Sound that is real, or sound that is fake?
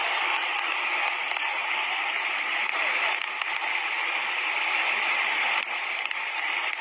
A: real